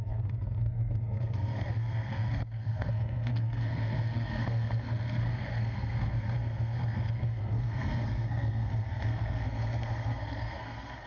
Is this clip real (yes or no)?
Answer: no